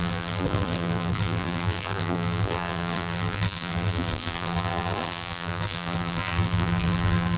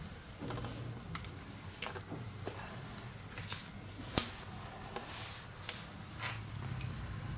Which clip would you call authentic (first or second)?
second